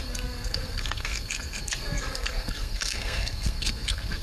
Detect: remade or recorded remade